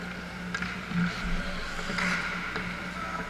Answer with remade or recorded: recorded